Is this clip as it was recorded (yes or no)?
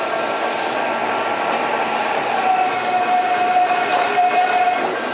no